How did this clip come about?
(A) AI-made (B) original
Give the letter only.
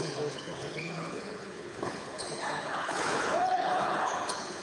A